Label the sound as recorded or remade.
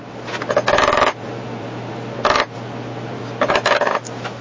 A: recorded